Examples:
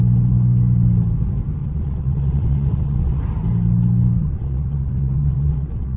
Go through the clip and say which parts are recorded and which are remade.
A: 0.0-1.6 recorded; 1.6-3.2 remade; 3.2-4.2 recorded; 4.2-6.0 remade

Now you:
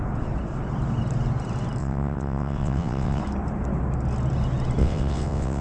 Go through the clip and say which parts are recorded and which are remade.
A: 0.0-1.8 recorded; 1.8-3.2 remade; 3.2-4.8 recorded; 4.8-5.6 remade

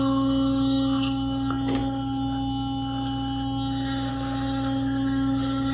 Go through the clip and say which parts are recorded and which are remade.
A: 0.0-5.7 recorded

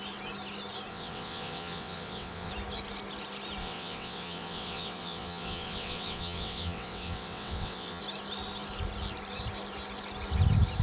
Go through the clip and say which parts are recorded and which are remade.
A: 0.0-0.9 recorded; 0.9-2.5 remade; 2.5-3.6 recorded; 3.6-8.0 remade; 8.0-10.8 recorded

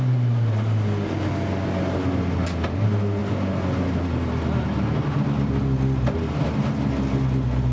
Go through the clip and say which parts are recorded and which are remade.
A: 0.0-7.7 recorded

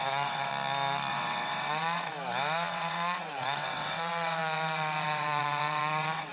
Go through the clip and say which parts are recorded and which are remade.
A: 0.0-0.5 remade; 0.5-1.1 recorded; 1.1-2.1 remade; 2.1-2.7 recorded; 2.7-6.3 remade

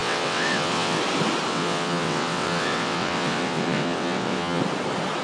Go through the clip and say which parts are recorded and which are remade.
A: 0.0-1.0 remade; 1.0-1.5 recorded; 1.5-4.6 remade; 4.6-5.2 recorded